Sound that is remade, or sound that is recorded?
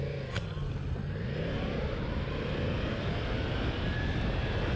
recorded